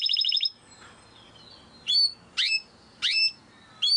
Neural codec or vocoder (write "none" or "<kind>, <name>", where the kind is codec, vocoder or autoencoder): none